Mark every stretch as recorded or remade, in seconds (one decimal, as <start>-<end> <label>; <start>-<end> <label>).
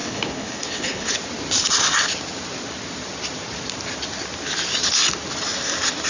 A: 0.0-1.1 remade; 1.1-6.1 recorded